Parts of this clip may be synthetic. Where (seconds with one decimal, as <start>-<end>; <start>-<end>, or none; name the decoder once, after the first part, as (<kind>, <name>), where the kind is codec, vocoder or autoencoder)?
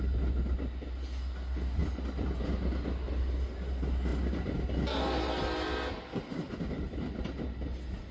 none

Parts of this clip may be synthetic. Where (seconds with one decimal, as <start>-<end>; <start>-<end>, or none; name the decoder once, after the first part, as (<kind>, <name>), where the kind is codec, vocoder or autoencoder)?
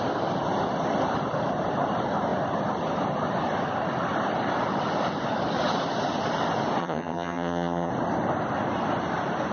6.8-7.9 (vocoder, HiFi-GAN)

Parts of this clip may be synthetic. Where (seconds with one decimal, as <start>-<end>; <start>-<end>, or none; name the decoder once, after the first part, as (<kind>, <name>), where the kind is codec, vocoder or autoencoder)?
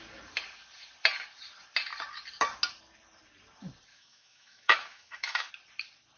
3.9-5.5 (autoencoder, DAC-VAE)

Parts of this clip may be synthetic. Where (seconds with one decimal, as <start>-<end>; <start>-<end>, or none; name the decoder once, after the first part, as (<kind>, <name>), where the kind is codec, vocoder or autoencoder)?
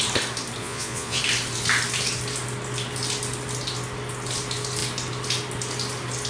0.6-1.2 (vocoder, Vocos)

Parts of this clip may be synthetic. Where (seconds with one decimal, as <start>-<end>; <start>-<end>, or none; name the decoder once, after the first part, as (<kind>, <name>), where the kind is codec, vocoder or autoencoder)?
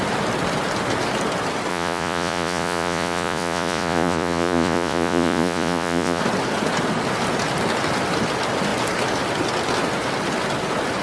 1.7-6.2 (vocoder, Vocos)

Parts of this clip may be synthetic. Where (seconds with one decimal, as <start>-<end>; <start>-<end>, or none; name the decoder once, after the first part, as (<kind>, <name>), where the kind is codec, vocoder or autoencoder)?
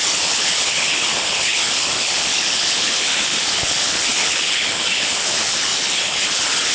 0.0-6.7 (codec, HILCodec)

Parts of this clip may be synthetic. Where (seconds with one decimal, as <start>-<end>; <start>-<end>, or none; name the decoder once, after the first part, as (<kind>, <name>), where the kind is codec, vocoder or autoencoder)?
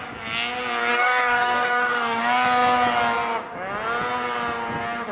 0.9-2.2 (codec, DAC)